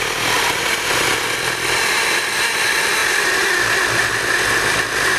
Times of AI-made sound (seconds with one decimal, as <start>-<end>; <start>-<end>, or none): none